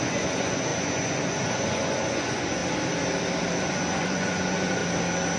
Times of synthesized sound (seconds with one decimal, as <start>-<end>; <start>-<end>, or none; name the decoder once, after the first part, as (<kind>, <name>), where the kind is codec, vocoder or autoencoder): 0.0-2.6 (vocoder, Vocos); 3.6-4.8